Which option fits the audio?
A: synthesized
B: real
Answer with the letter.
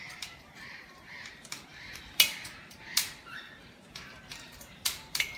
A